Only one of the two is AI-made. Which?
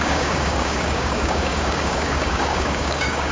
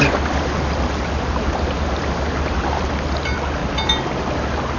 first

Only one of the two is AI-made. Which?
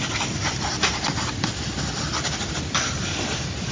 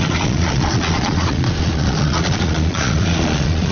second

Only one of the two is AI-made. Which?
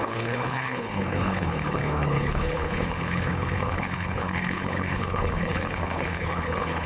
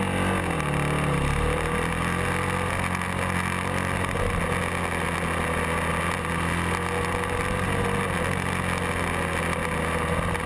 first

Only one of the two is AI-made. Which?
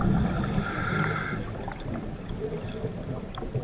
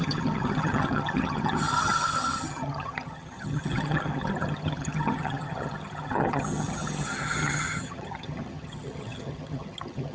second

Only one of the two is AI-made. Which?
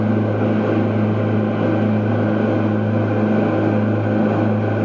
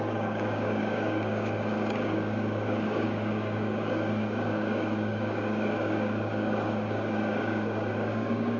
second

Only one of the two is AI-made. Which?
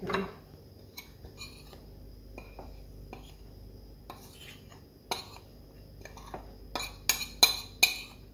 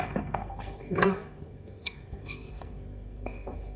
second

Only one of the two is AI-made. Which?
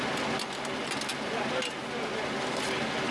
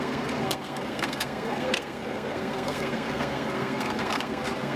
second